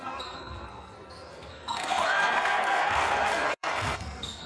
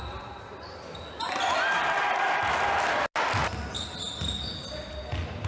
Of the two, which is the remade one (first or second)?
first